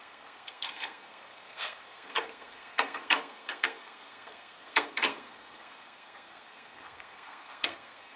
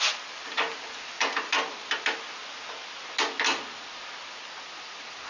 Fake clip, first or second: first